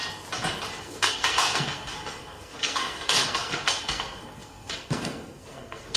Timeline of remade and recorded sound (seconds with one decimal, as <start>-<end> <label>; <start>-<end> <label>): 0.0-0.8 recorded; 0.8-6.0 remade